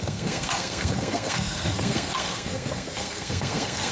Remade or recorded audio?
remade